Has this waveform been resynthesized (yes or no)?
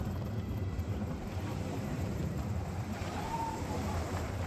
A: yes